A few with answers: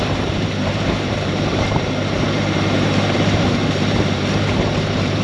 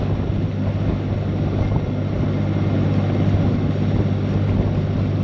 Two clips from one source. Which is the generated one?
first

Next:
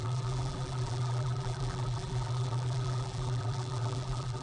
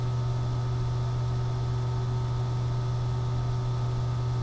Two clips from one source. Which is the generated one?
first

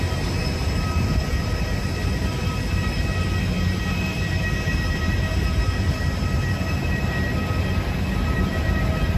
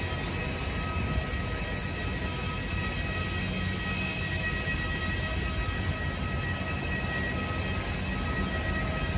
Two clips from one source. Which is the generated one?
first